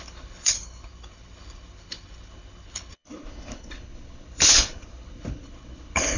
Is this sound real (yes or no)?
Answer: no